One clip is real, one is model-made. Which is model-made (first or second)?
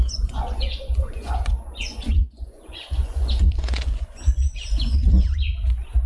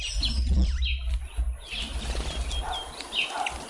first